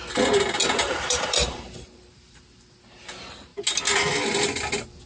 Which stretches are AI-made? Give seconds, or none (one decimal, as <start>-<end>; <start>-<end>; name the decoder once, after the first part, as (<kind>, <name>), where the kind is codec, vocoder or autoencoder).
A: 0.6-2.4 (vocoder, BigVGAN v2)